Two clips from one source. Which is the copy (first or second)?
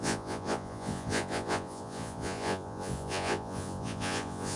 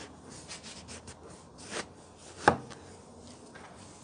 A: first